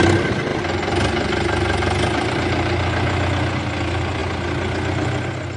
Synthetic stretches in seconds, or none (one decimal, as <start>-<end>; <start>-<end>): none